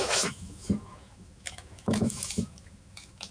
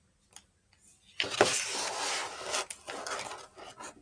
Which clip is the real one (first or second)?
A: second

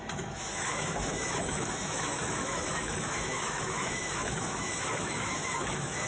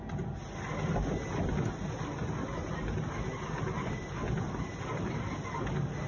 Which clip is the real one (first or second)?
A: second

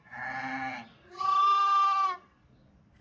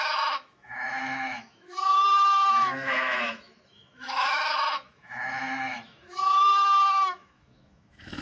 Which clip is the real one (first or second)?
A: first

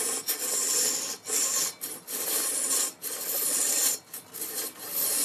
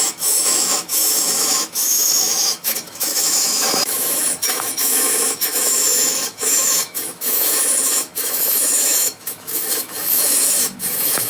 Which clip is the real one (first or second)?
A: first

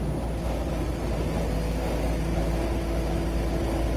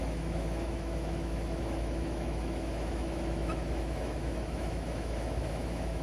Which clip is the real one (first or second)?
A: first